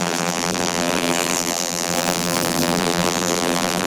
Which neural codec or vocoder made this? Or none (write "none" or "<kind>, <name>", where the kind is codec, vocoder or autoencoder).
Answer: vocoder, BigVGAN v2